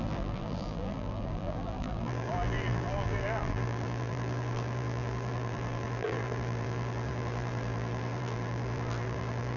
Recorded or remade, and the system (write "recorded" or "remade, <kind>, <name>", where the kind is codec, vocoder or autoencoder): remade, vocoder, BigVGAN v2